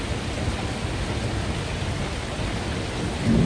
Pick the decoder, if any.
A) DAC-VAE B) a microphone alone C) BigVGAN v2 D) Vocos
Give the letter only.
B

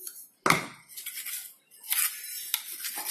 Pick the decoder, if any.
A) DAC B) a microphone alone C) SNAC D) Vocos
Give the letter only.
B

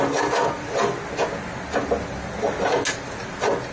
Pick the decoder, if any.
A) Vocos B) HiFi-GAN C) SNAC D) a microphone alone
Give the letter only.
D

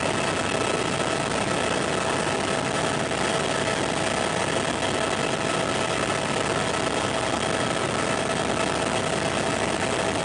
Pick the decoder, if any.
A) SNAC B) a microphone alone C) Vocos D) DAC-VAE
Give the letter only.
B